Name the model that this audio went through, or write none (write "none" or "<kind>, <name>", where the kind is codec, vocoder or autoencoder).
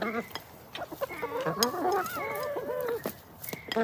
none